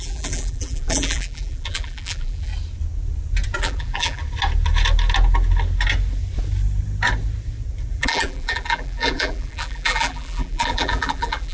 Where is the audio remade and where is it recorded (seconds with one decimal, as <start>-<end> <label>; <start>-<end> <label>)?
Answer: 0.0-2.5 remade; 2.5-3.6 recorded; 3.6-4.2 remade; 4.2-7.9 recorded; 7.9-11.5 remade